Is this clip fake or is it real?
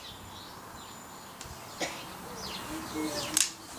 real